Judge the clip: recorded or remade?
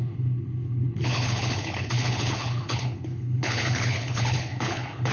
remade